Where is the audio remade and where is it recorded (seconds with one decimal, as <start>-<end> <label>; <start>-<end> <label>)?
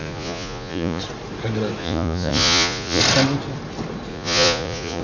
0.0-1.0 remade; 1.0-1.8 recorded; 1.8-3.0 remade; 3.0-4.1 recorded; 4.1-5.0 remade